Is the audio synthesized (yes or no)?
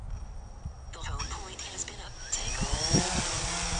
no